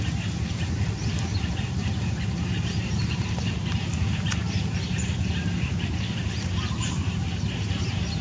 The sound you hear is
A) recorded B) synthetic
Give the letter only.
B